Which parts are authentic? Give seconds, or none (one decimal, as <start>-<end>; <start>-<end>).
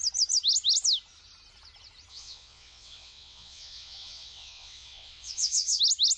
0.0-2.1; 5.8-6.2